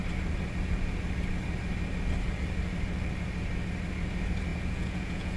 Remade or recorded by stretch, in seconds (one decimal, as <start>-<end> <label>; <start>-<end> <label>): 0.0-4.5 recorded; 4.5-5.4 remade

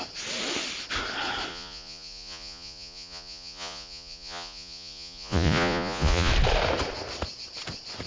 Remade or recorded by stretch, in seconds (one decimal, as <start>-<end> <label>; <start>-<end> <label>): 0.0-1.5 recorded; 1.5-6.3 remade; 6.3-8.1 recorded

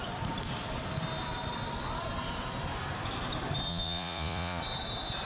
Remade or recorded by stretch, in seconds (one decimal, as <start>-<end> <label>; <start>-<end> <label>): 0.0-3.7 recorded; 3.7-4.6 remade; 4.6-5.3 recorded

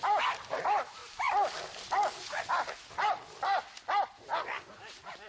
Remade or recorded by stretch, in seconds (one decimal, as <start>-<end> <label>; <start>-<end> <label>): 0.0-5.3 recorded